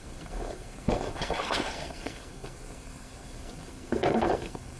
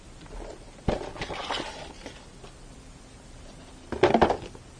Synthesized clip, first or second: first